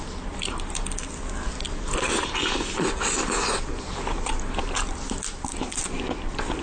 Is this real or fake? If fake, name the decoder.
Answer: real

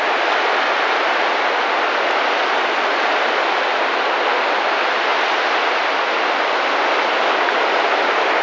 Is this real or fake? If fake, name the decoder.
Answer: real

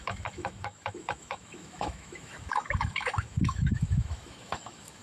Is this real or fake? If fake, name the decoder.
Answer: fake, autoencoder, DAC-VAE